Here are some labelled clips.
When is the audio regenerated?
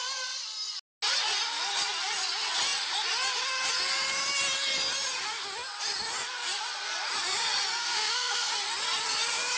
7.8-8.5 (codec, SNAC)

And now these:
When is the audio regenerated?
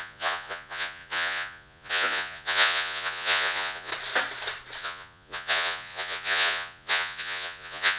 0.0-3.9 (vocoder, Vocos); 4.8-8.0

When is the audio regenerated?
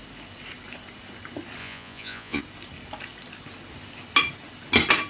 1.6-2.4 (vocoder, Vocos)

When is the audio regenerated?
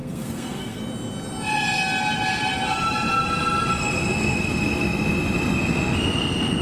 0.0-0.8 (codec, SNAC)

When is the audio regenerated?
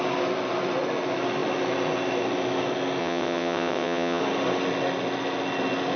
3.0-4.2 (vocoder, WaveNeXt)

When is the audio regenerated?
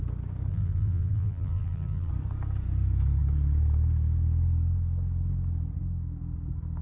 0.5-2.1 (vocoder, BigVGAN v2)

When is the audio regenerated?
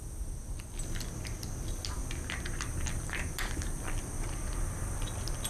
none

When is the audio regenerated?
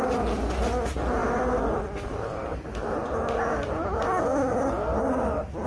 1.2-1.8 (vocoder, BigVGAN v2)